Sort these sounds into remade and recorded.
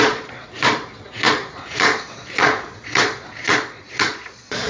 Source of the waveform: remade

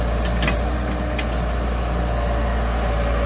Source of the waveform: recorded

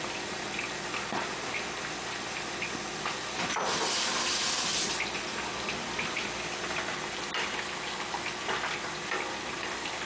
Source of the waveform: recorded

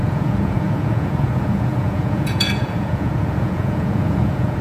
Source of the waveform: remade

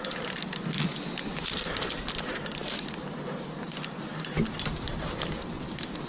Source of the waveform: recorded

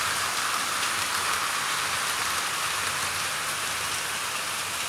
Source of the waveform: recorded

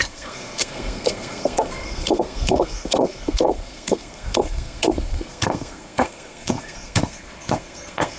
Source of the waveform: remade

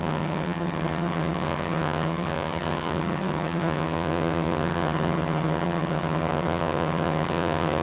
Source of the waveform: remade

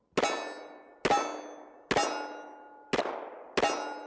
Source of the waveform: recorded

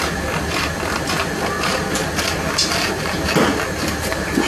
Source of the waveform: recorded